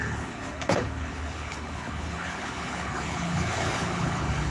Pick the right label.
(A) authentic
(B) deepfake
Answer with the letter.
B